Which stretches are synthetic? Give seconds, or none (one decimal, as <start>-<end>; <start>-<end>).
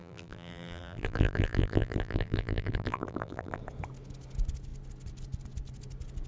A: 0.0-3.6